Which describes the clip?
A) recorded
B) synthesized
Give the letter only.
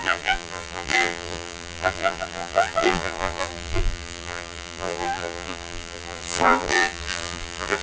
B